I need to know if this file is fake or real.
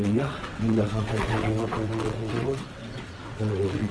fake